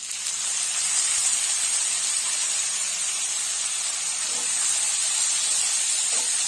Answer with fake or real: real